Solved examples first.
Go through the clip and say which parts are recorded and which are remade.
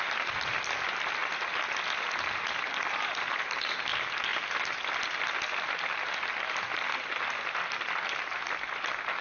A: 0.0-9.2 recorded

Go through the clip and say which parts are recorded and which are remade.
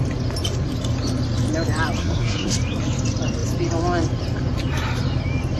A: 0.0-2.0 recorded; 2.0-2.5 remade; 2.5-5.6 recorded